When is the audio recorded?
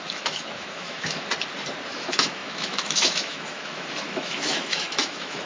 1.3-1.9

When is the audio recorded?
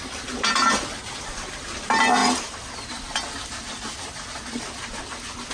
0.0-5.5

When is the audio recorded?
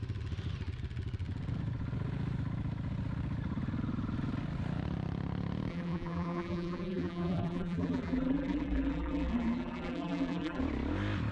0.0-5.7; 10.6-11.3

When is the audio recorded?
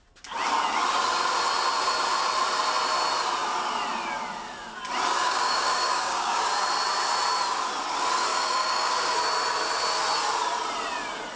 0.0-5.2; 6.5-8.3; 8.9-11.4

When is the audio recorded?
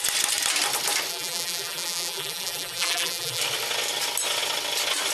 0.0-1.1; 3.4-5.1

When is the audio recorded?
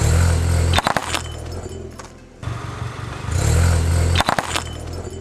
0.0-5.2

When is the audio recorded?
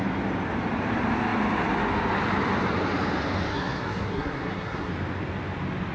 0.0-3.5; 4.9-5.9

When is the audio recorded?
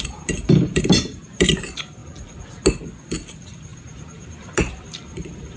2.0-3.3